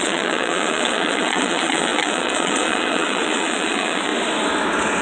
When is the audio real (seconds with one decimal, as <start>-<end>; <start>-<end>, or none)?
4.1-5.0